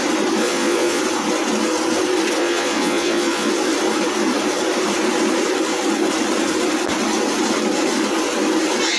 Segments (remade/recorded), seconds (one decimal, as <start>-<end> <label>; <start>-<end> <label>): 0.0-0.4 recorded; 0.4-1.0 remade; 1.0-2.4 recorded; 2.4-3.5 remade; 3.5-9.0 recorded